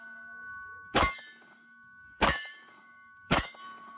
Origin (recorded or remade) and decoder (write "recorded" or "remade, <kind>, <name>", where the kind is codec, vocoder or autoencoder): remade, codec, DAC